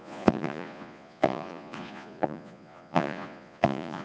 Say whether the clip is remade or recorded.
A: remade